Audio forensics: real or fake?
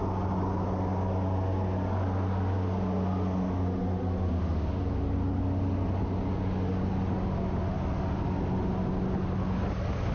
real